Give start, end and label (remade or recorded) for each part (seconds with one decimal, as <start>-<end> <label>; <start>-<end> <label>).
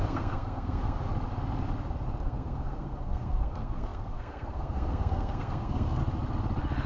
0.0-1.1 remade; 1.1-2.2 recorded; 2.2-6.0 remade; 6.0-6.9 recorded